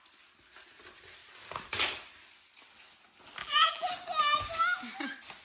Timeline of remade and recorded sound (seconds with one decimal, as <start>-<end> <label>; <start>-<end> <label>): 0.0-3.4 recorded; 3.4-3.9 remade; 3.9-5.4 recorded